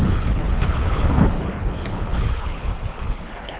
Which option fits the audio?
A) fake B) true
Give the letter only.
A